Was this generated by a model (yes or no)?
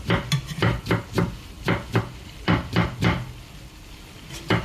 no